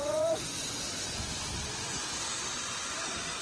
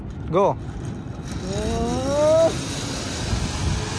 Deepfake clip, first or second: first